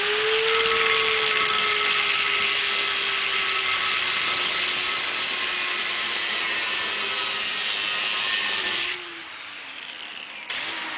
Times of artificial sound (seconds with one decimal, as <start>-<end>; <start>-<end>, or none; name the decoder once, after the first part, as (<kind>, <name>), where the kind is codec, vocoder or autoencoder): none